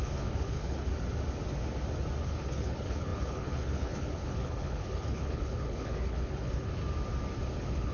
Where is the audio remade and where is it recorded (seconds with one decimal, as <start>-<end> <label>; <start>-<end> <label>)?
0.0-0.9 remade; 0.9-2.2 recorded; 2.2-6.8 remade; 6.8-7.5 recorded; 7.5-7.9 remade